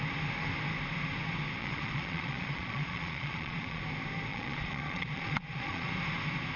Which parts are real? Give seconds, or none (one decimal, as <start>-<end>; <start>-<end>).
0.0-1.6; 3.8-4.3; 5.9-6.6